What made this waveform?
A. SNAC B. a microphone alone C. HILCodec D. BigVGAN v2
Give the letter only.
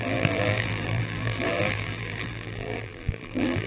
D